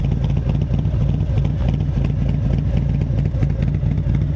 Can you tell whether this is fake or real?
real